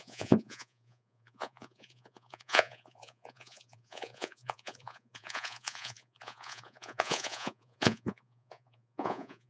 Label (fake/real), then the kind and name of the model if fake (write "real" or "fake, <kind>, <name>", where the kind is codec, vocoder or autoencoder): fake, vocoder, Vocos